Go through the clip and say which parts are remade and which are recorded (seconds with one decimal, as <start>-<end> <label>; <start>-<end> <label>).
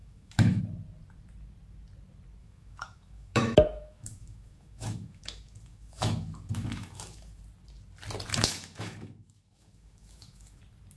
0.0-0.6 remade; 0.6-2.4 recorded; 2.4-7.4 remade; 7.4-8.3 recorded; 8.3-10.6 remade; 10.6-11.0 recorded